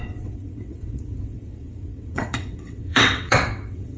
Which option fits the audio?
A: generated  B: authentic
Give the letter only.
A